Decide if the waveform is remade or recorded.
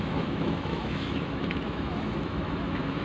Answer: remade